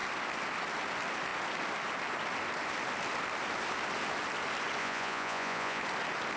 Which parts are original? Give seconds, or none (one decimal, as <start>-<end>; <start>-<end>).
0.0-4.8; 5.8-6.4